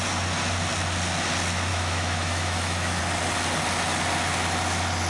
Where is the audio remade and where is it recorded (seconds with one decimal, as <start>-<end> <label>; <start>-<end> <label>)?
0.0-1.7 recorded; 1.7-3.0 remade; 3.0-5.1 recorded